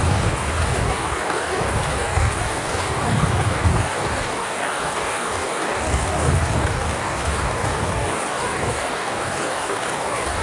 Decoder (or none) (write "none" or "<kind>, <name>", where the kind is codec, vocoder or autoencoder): codec, DAC